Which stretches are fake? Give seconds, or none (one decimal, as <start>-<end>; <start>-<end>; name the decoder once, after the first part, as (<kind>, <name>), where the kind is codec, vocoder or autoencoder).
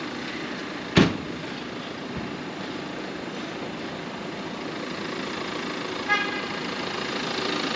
none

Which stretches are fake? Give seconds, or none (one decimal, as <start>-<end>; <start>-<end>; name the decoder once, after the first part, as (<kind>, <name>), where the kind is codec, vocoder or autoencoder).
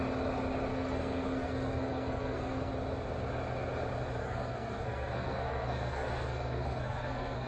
0.7-2.7 (codec, SNAC); 4.2-7.5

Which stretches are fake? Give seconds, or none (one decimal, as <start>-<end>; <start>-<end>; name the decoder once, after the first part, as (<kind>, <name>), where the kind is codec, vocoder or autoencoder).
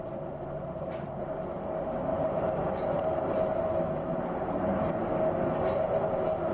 0.0-1.4 (vocoder, BigVGAN v2); 2.1-2.7; 4.1-5.0